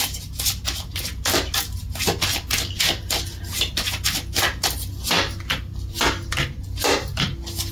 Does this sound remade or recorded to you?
recorded